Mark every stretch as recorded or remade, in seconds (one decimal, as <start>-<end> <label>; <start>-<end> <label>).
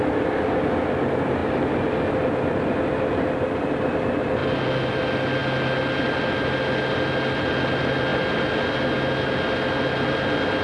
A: 0.0-10.6 recorded